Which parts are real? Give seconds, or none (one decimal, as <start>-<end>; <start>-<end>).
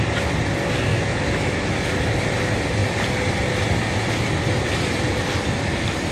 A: 0.0-0.9; 1.9-6.1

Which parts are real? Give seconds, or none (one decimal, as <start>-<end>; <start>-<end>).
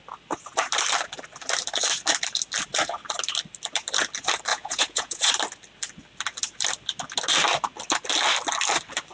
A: 0.0-4.5; 5.3-9.1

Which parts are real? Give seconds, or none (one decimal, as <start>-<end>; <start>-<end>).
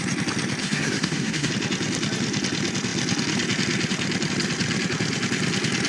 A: 0.0-0.6; 1.5-5.9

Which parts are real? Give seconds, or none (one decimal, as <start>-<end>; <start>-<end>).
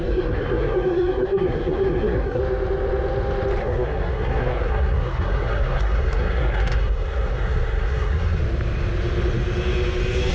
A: 2.4-3.6; 8.4-10.3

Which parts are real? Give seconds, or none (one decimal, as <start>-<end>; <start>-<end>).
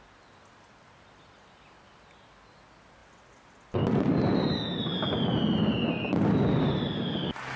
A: 0.0-7.6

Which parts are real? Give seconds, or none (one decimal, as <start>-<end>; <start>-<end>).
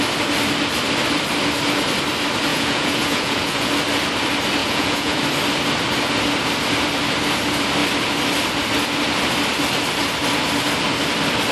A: 0.0-2.5; 3.7-4.6; 5.2-11.5